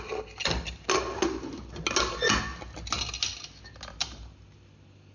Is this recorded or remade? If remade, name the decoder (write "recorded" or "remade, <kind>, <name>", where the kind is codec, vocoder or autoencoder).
recorded